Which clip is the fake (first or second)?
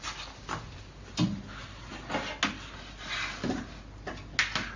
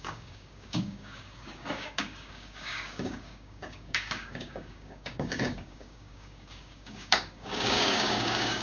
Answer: second